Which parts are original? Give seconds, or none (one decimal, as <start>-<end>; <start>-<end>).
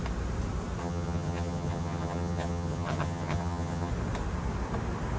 0.0-0.8; 3.9-5.2